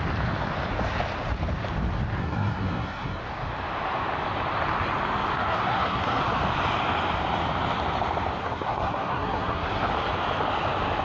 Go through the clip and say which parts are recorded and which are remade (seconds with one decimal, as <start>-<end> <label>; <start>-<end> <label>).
0.0-2.2 recorded; 2.2-3.2 remade; 3.2-5.3 recorded; 5.3-6.2 remade; 6.2-8.4 recorded; 8.4-9.9 remade; 9.9-11.0 recorded